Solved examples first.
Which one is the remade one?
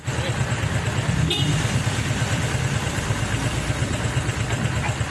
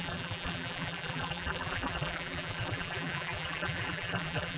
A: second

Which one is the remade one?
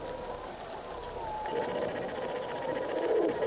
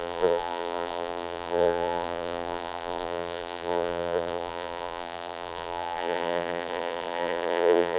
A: second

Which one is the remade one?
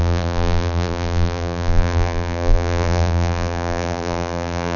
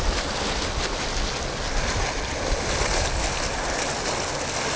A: first